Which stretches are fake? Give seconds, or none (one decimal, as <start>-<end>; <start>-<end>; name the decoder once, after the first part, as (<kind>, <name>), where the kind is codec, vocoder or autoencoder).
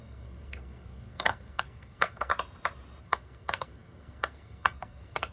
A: 0.0-2.3 (codec, SNAC); 3.0-5.3